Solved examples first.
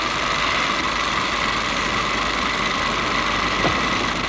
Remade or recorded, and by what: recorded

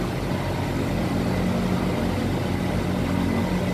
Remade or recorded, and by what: recorded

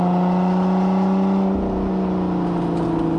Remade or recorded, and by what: recorded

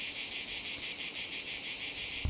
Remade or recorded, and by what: recorded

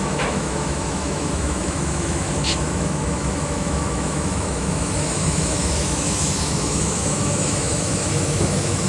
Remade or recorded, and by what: remade, autoencoder, DAC-VAE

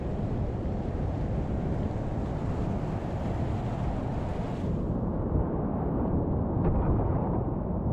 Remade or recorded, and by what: recorded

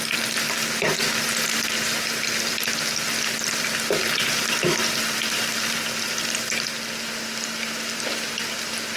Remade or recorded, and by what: recorded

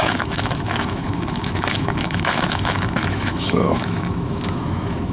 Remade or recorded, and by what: remade, autoencoder, DAC-VAE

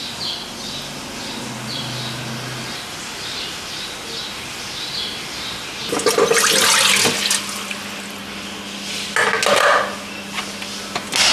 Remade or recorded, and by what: recorded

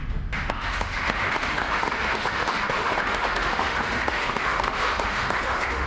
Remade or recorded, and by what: remade, autoencoder, DAC-VAE